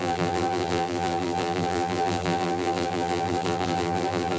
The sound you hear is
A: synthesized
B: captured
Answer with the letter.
A